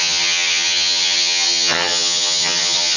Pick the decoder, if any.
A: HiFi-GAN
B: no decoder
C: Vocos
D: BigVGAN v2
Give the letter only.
A